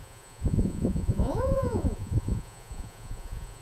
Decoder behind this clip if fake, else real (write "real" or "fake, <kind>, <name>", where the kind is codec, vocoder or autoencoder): fake, vocoder, Vocos